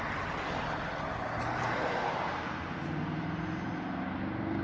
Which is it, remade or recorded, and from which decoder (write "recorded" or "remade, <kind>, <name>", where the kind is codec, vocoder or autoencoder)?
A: recorded